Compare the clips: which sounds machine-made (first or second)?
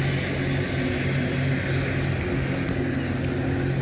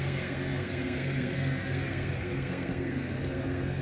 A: second